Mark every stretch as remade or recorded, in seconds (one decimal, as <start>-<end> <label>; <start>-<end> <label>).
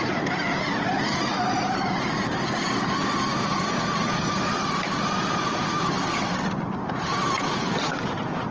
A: 0.0-1.3 recorded; 1.3-6.2 remade; 6.2-8.5 recorded